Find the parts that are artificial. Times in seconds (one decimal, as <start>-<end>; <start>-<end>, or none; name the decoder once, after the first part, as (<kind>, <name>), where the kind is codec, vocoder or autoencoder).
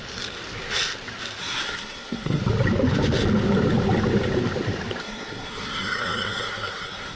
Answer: 1.4-2.4 (codec, SNAC); 5.0-7.2